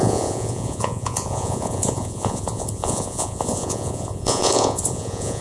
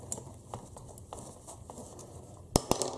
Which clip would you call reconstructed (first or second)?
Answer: first